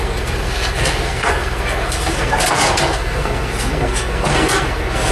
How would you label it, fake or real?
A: fake